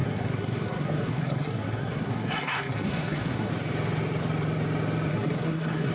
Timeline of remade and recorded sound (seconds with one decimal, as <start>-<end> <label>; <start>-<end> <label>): 0.0-3.5 remade; 3.5-5.1 recorded; 5.1-5.9 remade